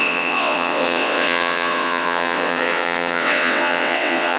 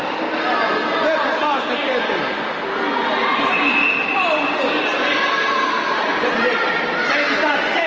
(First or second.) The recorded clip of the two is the second